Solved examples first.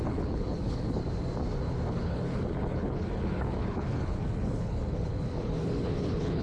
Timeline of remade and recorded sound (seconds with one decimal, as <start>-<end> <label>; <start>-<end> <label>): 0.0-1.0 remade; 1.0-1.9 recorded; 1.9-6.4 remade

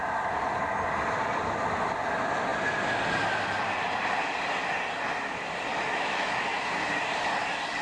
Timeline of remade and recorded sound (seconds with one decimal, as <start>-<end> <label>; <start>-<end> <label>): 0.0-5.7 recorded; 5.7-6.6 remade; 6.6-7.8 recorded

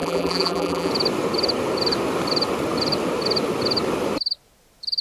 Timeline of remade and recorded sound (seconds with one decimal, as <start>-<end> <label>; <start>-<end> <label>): 0.0-0.9 remade; 0.9-5.0 recorded

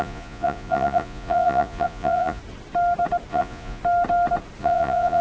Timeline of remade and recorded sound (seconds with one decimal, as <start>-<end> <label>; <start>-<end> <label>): 0.0-2.4 remade; 2.4-3.3 recorded; 3.3-3.8 remade; 3.8-4.6 recorded; 4.6-5.2 remade

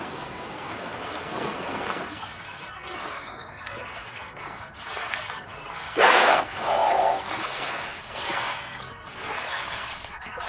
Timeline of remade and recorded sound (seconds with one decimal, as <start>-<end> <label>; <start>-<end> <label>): 0.0-10.5 remade